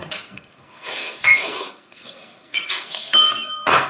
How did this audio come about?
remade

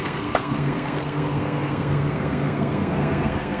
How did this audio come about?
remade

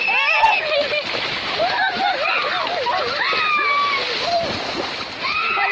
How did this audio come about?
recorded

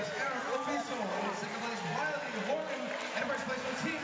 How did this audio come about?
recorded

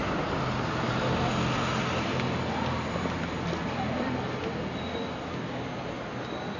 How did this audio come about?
recorded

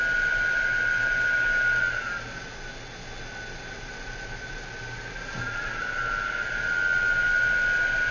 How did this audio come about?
recorded